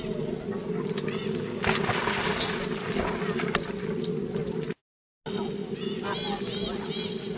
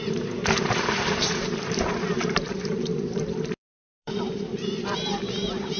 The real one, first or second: first